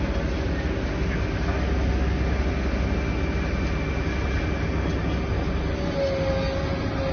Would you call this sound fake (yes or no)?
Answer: no